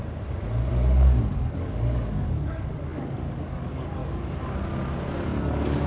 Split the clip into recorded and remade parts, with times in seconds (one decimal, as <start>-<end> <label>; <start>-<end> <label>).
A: 0.0-0.7 recorded; 0.7-4.0 remade; 4.0-5.4 recorded; 5.4-5.9 remade